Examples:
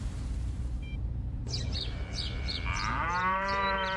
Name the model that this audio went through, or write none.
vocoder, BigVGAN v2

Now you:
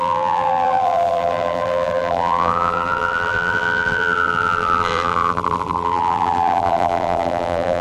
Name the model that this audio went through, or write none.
vocoder, BigVGAN v2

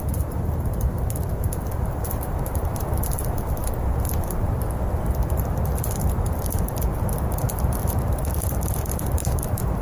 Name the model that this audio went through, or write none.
vocoder, BigVGAN v2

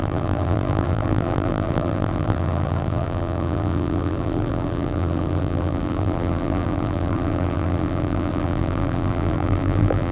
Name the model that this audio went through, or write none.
vocoder, BigVGAN v2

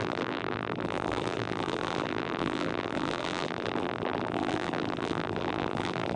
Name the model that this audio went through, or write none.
vocoder, BigVGAN v2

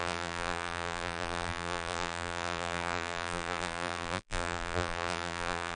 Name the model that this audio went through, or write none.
vocoder, BigVGAN v2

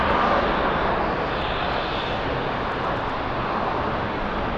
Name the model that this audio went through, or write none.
none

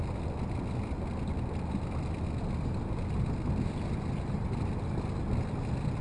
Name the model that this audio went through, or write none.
none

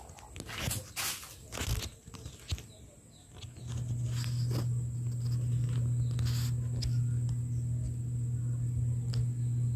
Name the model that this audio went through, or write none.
none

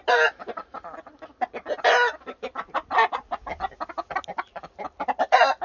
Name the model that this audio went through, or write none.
none